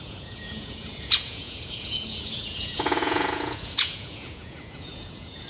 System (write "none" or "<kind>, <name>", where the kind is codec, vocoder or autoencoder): vocoder, Vocos